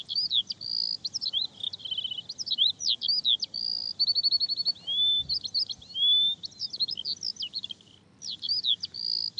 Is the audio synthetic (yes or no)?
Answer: no